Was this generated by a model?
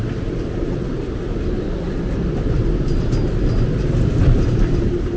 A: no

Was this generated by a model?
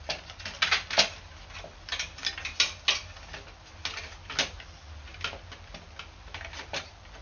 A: no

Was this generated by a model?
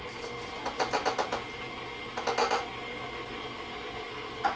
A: no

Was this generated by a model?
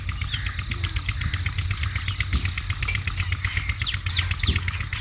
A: no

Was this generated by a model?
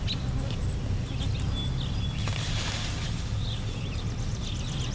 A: no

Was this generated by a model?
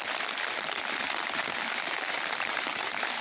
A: no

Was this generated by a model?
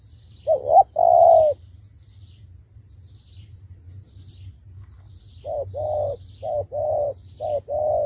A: no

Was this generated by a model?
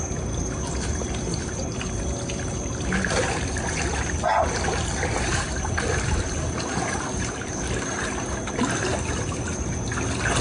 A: no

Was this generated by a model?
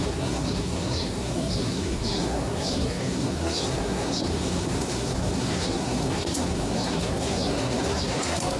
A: yes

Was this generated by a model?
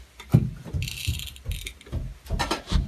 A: no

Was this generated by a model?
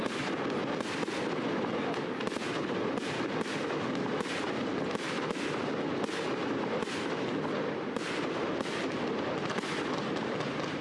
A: no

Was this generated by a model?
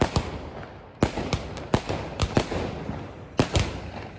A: no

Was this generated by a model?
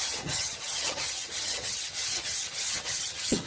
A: yes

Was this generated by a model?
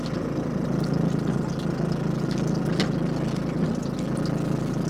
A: no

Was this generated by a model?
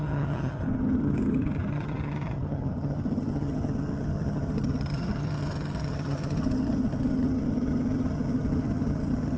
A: yes